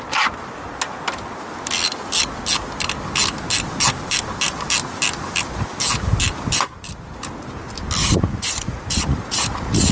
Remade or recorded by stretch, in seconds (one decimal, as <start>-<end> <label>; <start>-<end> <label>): 0.0-8.0 recorded; 8.0-9.9 remade